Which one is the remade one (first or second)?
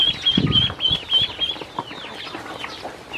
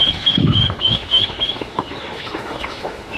second